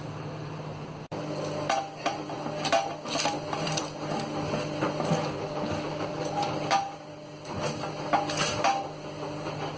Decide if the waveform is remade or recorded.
recorded